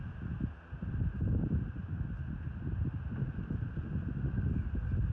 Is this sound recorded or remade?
recorded